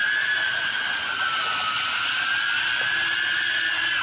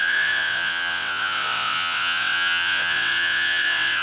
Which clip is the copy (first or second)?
second